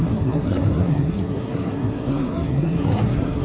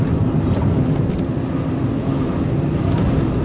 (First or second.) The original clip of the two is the second